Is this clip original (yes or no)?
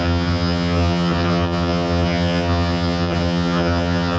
no